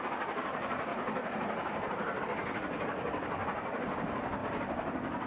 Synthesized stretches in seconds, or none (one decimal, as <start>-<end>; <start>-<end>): 0.9-2.2